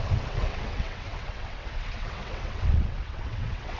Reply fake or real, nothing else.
fake